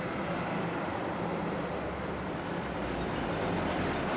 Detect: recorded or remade recorded